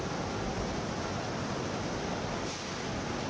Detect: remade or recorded recorded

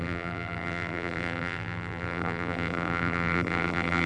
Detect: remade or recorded remade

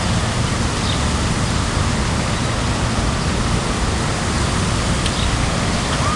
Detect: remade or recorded recorded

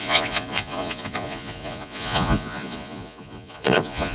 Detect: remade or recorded remade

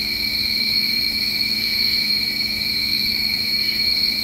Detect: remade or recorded remade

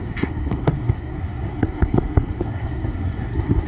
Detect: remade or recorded remade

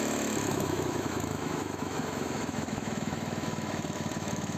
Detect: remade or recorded remade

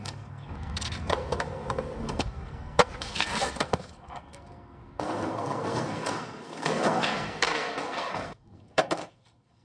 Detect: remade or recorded remade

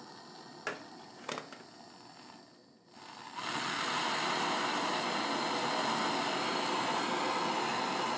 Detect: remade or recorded recorded